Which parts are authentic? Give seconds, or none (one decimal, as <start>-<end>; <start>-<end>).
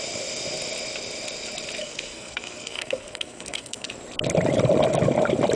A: 0.0-1.8; 3.9-5.6